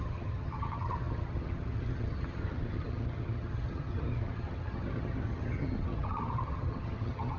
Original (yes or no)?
no